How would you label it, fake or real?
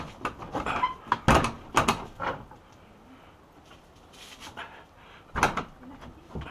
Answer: real